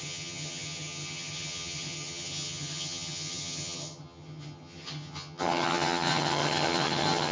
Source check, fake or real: fake